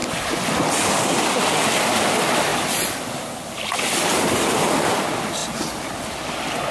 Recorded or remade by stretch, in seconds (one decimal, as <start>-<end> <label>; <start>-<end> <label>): 0.0-1.8 recorded; 1.8-2.5 remade; 2.5-4.0 recorded; 4.0-5.4 remade; 5.4-6.7 recorded